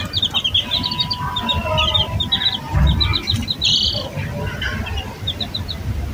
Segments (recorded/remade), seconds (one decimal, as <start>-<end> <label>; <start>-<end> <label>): 0.0-6.1 recorded